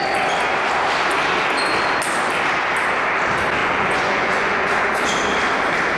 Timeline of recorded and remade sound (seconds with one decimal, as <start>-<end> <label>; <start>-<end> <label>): 0.0-3.6 recorded; 3.6-5.0 remade; 5.0-6.0 recorded